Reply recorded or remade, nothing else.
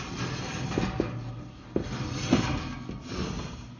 recorded